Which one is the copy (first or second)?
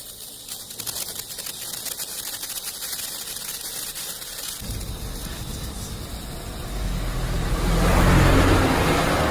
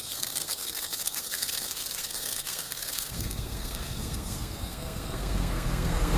second